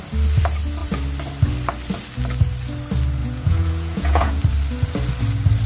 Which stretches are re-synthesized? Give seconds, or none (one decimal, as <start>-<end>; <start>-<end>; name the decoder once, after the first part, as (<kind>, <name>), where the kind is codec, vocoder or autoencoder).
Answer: 3.2-4.4 (vocoder, Vocos)